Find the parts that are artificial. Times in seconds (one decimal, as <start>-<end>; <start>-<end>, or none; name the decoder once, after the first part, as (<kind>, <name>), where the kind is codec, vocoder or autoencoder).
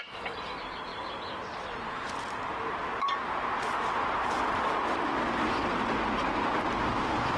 none